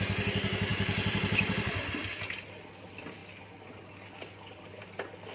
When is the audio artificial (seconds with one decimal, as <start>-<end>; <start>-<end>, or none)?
0.7-1.7